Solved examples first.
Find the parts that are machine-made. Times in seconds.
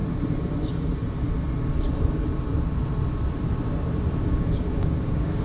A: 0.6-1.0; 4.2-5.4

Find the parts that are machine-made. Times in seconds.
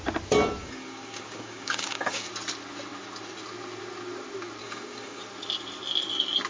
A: 0.6-2.3; 4.6-5.2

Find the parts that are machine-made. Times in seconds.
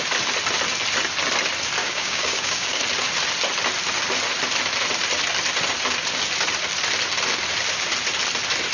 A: 1.8-2.8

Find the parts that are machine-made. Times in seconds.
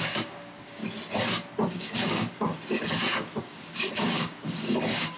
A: 0.0-0.8; 1.7-2.5; 3.4-5.2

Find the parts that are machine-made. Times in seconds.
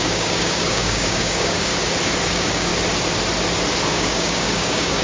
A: 0.0-1.7; 2.3-2.7; 3.9-5.0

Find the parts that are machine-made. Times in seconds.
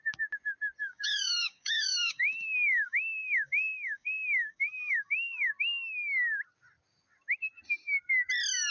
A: 0.8-5.5